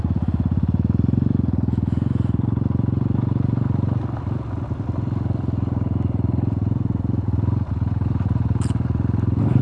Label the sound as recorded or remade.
recorded